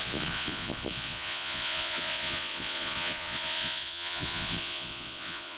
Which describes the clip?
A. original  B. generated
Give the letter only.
B